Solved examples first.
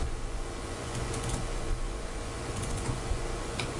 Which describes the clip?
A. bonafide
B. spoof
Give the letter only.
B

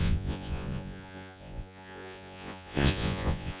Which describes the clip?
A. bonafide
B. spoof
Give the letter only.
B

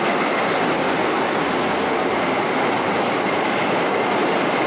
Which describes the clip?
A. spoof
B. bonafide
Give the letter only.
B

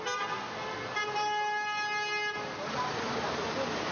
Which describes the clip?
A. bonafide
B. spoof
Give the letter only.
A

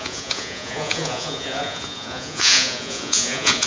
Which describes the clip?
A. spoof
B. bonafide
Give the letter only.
A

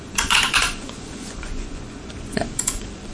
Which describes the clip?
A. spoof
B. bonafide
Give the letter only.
A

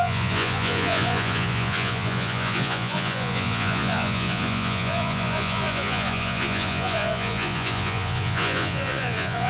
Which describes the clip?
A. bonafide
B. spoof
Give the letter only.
B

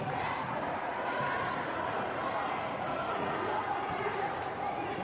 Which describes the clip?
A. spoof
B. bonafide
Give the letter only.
A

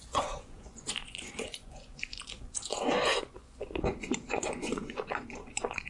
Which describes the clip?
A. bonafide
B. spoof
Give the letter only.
B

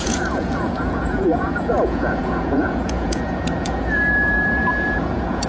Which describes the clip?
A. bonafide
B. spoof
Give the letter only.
B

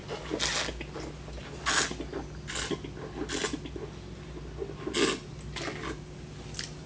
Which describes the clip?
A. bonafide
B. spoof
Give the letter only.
A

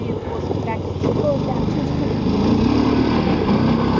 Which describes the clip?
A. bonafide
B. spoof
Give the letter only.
A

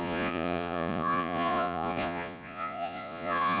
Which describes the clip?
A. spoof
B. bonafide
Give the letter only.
A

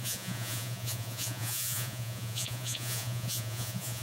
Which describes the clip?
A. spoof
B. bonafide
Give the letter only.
A